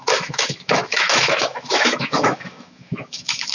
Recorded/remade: remade